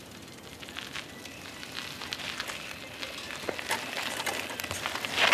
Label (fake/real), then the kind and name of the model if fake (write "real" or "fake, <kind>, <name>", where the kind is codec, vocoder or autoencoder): real